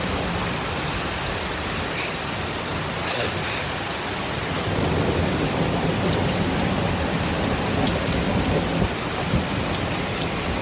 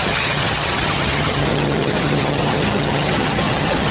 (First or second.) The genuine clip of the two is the first